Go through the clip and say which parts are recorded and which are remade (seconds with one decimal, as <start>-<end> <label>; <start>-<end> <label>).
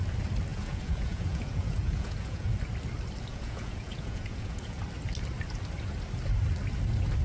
0.0-0.5 recorded; 0.5-2.5 remade; 2.5-3.3 recorded; 3.3-4.8 remade; 4.8-7.2 recorded